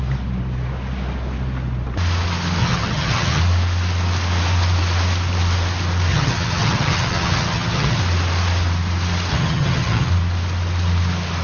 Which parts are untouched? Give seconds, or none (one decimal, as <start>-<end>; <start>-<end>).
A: 0.0-2.6; 3.4-6.1; 8.0-9.3; 10.1-11.4